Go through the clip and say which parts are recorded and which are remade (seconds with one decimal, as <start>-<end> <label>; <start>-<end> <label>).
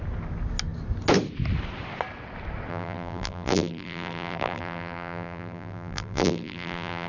0.0-2.7 recorded; 2.7-7.1 remade